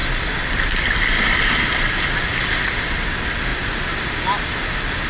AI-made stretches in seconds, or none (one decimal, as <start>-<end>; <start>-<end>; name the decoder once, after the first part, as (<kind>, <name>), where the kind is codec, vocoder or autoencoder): none